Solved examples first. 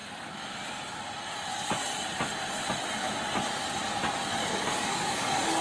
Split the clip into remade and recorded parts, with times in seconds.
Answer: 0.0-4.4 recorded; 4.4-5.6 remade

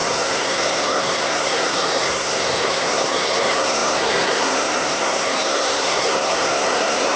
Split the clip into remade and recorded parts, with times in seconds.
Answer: 0.0-7.2 remade